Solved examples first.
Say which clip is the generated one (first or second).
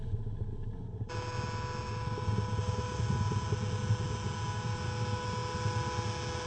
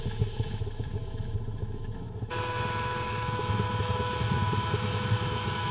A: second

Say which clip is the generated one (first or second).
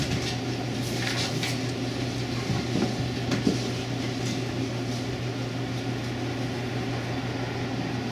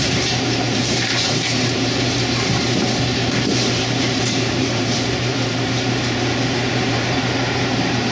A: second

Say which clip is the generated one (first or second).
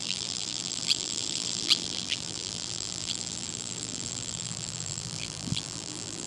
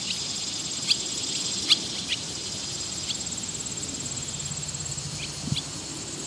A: first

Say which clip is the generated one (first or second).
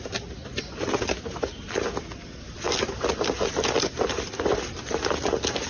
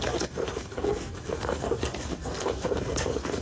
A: second